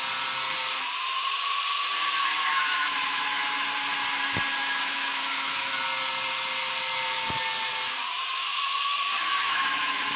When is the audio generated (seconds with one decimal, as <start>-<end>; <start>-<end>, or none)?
2.2-3.7; 4.6-5.8; 8.4-10.2

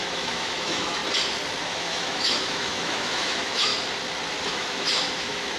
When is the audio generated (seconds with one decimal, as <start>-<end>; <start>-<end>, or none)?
0.0-1.0; 1.6-3.7; 4.5-5.6